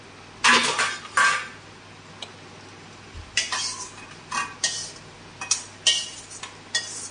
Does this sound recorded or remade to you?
recorded